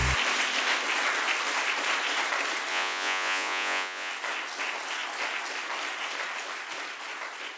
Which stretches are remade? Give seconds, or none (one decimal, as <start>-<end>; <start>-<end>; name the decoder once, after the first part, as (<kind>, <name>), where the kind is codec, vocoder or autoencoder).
2.7-4.1 (vocoder, Vocos)